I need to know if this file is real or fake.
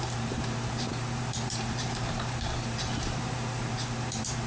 fake